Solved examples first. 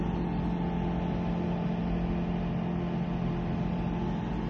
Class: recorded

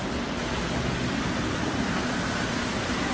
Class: recorded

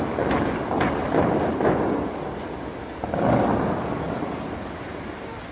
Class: recorded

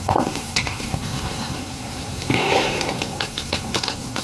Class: remade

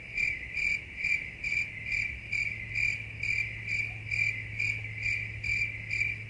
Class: recorded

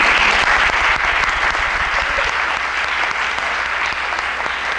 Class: recorded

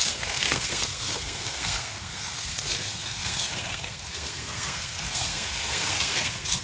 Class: remade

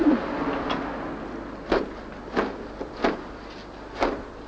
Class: recorded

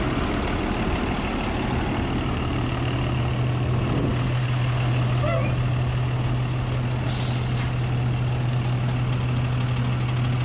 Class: recorded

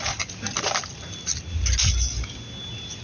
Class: recorded